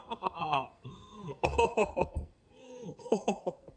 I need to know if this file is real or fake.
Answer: fake